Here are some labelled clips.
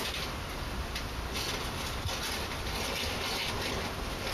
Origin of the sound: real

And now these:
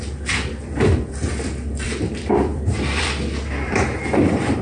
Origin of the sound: fake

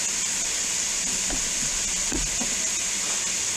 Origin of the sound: real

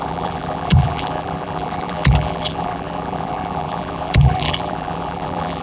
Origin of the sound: fake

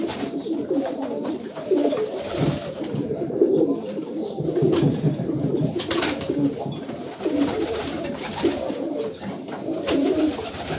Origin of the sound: fake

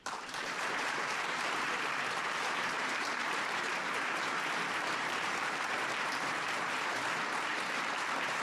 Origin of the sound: fake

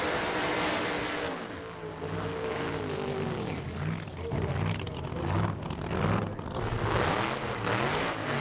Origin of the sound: real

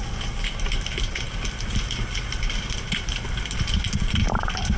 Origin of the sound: fake